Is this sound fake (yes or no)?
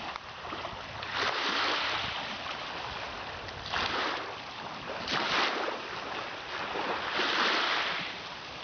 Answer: no